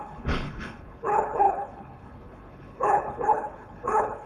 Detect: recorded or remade remade